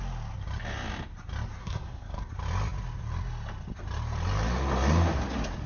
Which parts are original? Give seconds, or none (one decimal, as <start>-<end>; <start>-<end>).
0.0-1.6; 2.3-5.7